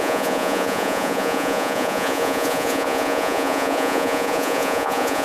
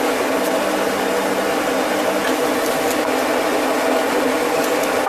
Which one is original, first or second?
second